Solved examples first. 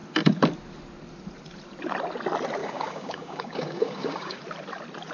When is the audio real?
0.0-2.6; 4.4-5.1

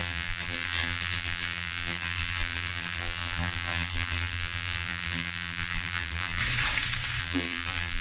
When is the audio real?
6.4-7.2

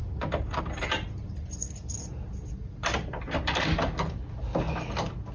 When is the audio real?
0.0-5.3